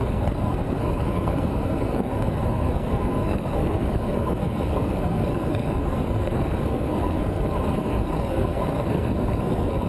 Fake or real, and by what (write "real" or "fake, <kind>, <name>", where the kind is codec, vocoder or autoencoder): fake, codec, SNAC